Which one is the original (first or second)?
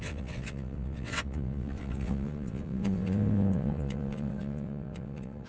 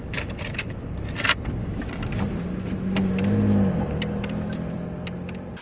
second